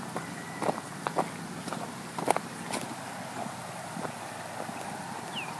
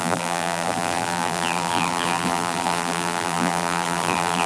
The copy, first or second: second